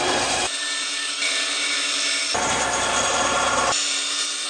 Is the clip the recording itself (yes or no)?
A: no